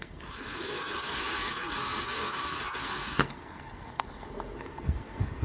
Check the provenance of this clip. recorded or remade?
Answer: remade